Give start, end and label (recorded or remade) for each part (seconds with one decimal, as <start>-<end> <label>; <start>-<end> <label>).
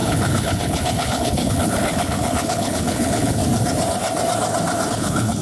0.0-3.4 remade; 3.4-4.9 recorded; 4.9-5.4 remade